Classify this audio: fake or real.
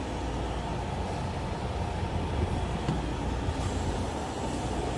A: real